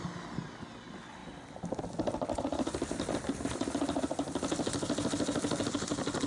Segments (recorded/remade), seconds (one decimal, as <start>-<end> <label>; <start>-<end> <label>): 0.0-6.3 recorded